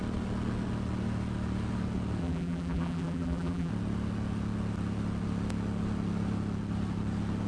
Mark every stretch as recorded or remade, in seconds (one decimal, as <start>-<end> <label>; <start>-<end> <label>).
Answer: 0.0-2.2 recorded; 2.2-3.7 remade; 3.7-7.5 recorded